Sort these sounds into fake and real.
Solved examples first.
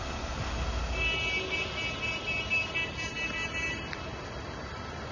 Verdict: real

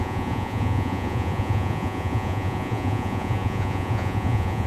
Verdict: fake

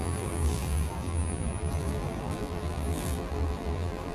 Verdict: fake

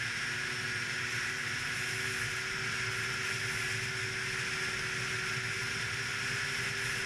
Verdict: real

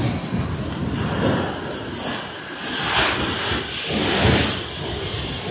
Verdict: real